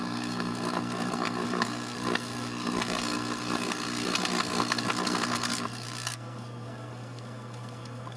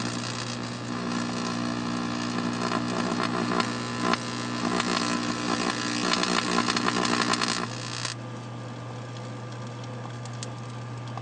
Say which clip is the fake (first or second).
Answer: first